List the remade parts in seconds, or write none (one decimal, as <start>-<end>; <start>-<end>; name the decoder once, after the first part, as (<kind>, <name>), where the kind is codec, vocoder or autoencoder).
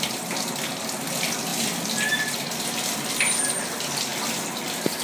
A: none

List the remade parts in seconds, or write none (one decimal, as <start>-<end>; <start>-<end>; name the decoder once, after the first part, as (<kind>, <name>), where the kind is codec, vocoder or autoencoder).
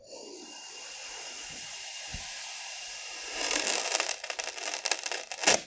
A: 1.0-1.5 (vocoder, Vocos)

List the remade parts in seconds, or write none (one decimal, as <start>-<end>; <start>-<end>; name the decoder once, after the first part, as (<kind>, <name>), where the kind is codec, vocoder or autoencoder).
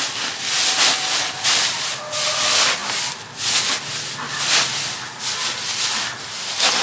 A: none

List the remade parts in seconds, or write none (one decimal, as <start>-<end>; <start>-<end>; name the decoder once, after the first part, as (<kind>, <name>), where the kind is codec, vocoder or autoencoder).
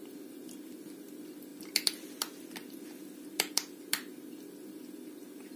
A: none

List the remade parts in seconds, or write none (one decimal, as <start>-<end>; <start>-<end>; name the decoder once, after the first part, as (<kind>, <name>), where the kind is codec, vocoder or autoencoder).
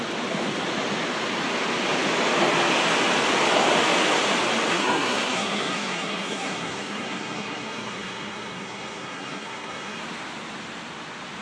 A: 4.7-10.0 (codec, SNAC)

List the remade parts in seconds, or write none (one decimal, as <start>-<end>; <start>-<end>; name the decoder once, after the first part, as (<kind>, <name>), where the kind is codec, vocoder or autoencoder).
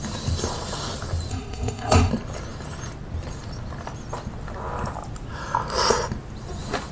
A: 1.3-2.1 (codec, SNAC)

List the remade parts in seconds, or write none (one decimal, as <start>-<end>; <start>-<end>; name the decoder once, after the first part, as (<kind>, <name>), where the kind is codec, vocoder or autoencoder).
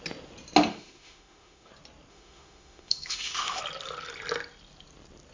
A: 0.7-1.7 (autoencoder, DAC-VAE); 2.1-3.6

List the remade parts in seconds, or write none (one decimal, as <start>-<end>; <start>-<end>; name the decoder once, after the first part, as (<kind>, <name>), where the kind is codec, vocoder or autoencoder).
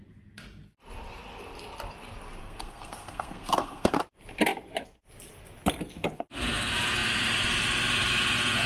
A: 2.4-4.0 (codec, SNAC)